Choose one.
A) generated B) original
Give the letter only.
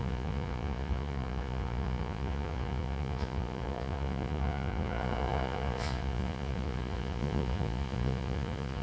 A